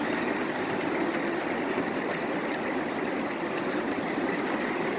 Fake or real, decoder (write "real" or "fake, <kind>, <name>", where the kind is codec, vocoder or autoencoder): fake, vocoder, BigVGAN v2